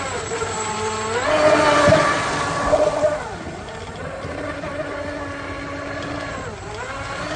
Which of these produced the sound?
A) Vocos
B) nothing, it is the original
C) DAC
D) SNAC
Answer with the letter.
B